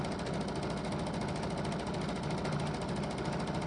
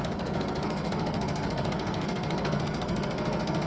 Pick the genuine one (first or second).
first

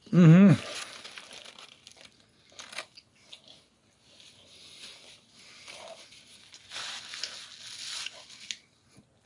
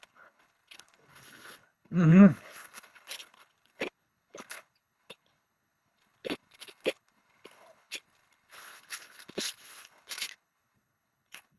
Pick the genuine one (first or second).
first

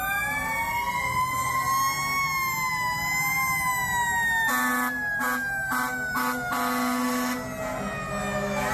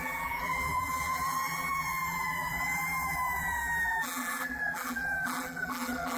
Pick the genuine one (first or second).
first